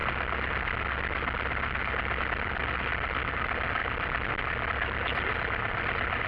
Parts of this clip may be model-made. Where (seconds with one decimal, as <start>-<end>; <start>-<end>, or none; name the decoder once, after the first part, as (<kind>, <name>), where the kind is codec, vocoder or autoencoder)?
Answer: 2.2-3.8 (vocoder, BigVGAN v2); 4.7-6.3